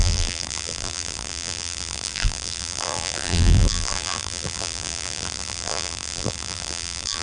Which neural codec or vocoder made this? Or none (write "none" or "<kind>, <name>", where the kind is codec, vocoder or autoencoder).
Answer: vocoder, BigVGAN v2